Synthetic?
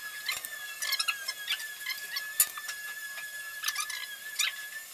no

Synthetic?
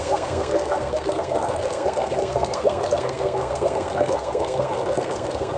yes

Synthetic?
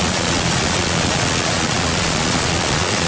yes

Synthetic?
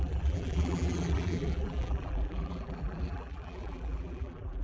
yes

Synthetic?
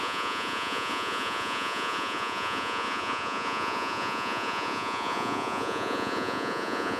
yes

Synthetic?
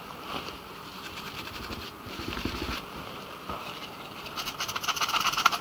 yes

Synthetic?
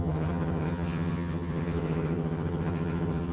yes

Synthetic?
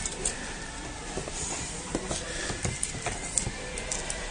yes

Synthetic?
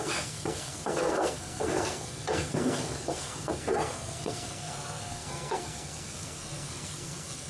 yes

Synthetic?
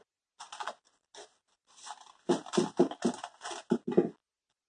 no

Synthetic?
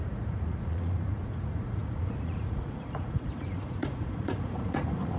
yes